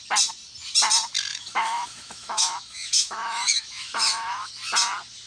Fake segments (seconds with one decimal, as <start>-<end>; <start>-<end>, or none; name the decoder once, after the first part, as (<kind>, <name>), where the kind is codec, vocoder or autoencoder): 1.3-4.5 (autoencoder, DAC-VAE)